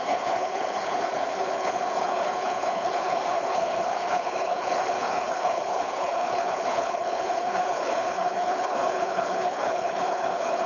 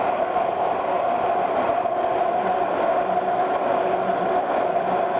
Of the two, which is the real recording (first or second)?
second